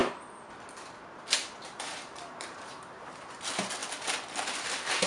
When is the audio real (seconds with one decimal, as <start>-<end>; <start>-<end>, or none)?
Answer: 0.5-1.4; 3.4-5.1